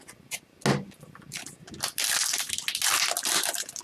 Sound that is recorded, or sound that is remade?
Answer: recorded